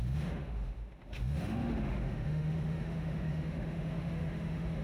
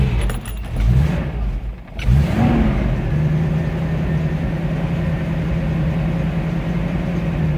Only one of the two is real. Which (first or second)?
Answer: second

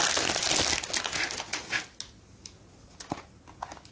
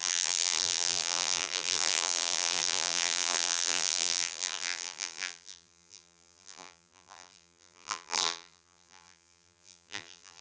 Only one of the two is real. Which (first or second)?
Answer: first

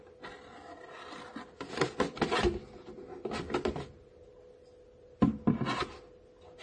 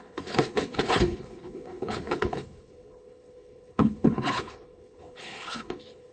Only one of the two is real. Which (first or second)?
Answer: first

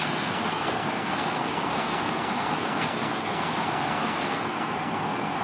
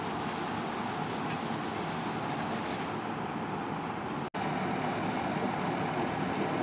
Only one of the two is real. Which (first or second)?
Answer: second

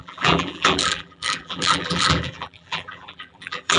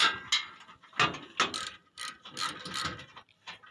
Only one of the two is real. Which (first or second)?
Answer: second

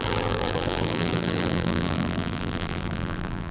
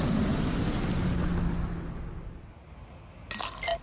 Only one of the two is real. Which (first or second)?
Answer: second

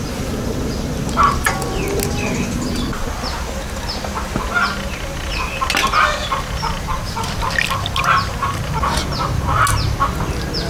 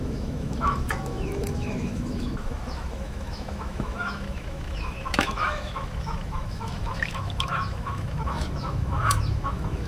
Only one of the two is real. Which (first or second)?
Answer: first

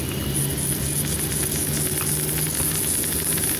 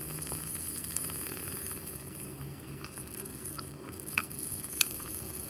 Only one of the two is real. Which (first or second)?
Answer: first